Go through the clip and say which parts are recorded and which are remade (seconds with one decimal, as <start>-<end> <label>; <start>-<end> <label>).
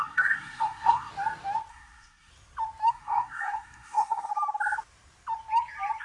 0.0-1.1 remade; 1.1-1.7 recorded; 1.7-2.3 remade; 2.3-2.9 recorded; 2.9-4.3 remade; 4.3-6.0 recorded